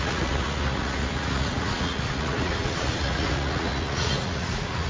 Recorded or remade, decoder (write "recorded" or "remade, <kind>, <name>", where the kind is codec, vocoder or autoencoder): remade, vocoder, Vocos